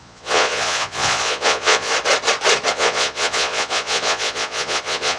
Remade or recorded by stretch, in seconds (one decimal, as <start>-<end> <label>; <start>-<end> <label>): 0.0-1.9 remade; 1.9-2.7 recorded; 2.7-5.2 remade